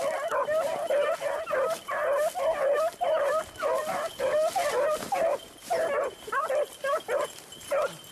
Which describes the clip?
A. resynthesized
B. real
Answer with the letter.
B